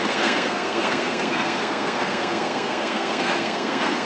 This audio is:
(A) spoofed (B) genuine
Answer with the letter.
A